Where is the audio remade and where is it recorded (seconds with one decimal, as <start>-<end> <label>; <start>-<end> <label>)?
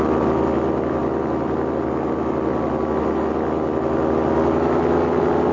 0.0-5.5 recorded